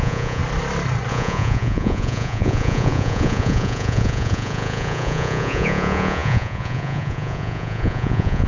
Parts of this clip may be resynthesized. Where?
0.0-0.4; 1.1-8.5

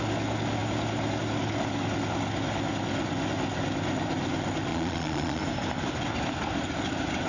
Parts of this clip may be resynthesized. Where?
4.7-5.4

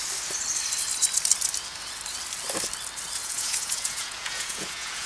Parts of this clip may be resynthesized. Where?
3.2-5.1

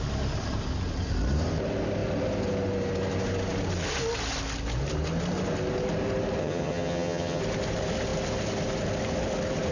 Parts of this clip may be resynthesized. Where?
6.4-7.4

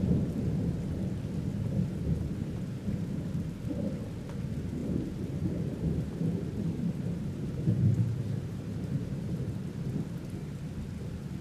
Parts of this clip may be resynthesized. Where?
2.4-3.3; 4.8-9.9

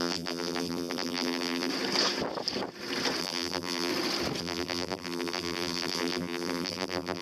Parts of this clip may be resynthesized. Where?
0.0-1.7; 3.2-3.9; 4.4-7.2

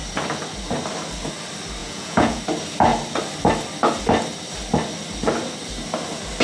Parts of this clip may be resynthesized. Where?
1.8-2.4